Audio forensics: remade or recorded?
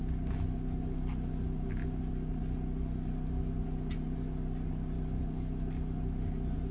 recorded